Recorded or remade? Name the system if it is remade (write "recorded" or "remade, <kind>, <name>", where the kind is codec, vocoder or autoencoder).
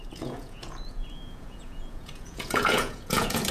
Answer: remade, vocoder, Vocos